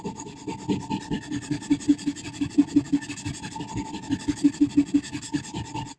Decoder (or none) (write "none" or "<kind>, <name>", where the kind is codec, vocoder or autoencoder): none